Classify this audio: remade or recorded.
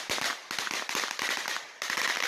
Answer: recorded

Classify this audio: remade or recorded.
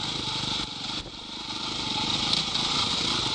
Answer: recorded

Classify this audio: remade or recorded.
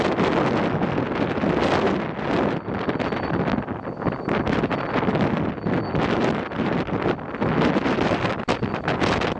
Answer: recorded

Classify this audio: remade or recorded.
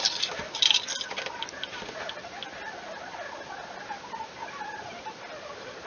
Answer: recorded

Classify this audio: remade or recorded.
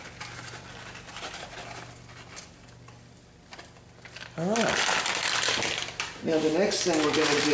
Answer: recorded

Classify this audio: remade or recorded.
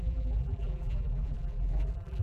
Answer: remade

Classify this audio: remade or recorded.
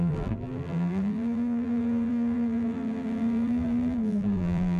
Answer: remade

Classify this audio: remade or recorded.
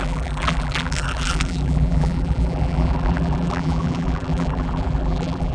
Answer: remade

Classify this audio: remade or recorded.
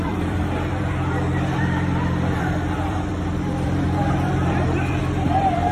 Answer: remade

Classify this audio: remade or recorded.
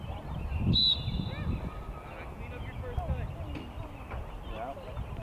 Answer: recorded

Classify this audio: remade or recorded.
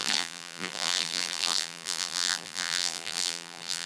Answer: remade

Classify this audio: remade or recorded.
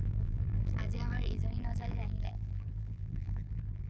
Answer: remade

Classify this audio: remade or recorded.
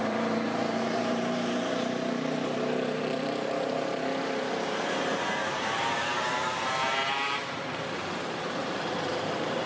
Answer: remade